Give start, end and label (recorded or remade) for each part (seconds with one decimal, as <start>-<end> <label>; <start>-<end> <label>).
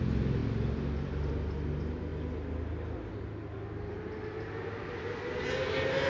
0.0-6.1 recorded